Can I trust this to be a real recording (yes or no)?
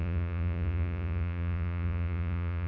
no